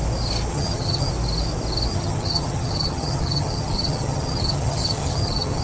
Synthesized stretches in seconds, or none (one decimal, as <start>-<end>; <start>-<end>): 0.5-1.1; 1.9-5.6